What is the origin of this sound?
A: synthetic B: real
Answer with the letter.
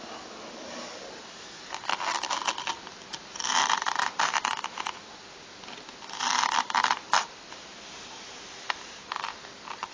B